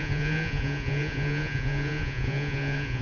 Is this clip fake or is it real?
fake